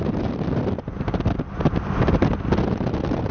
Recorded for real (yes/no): yes